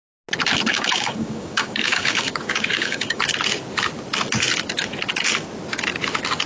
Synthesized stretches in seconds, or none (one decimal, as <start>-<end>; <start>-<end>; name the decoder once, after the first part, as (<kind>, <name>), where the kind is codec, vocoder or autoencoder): 0.7-3.2 (codec, DAC)